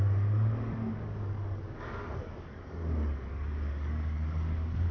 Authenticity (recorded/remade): remade